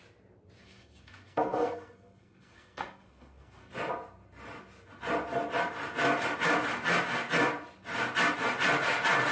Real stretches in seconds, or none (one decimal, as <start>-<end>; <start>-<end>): 0.0-0.6; 3.7-9.3